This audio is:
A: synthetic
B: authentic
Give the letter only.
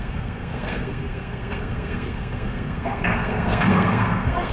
A